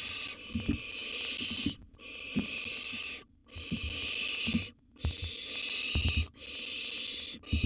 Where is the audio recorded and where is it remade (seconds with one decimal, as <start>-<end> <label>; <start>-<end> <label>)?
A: 0.0-7.7 recorded